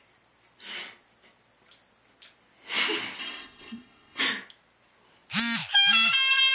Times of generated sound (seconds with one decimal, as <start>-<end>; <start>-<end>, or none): 3.2-4.2